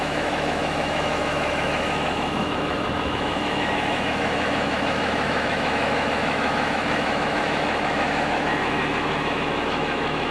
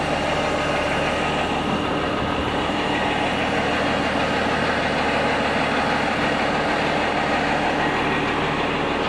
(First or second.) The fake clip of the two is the first